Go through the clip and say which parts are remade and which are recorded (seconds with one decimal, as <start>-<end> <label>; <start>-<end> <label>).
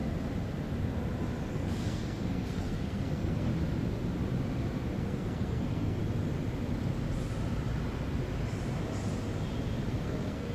0.0-1.5 recorded; 1.5-3.5 remade; 3.5-5.0 recorded; 5.0-6.0 remade; 6.0-9.9 recorded; 9.9-10.5 remade